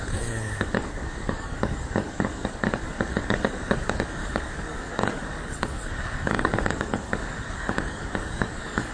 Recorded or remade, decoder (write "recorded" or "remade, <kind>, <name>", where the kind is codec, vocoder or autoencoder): remade, codec, DAC